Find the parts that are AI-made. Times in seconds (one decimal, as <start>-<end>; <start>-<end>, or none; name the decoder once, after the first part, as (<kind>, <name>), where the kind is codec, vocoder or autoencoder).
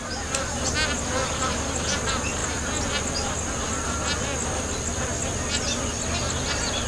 none